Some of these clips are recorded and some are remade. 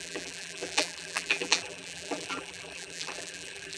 remade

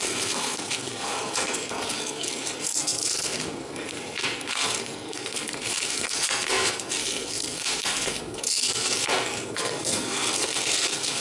remade